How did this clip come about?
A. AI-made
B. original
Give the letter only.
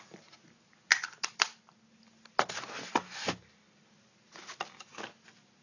B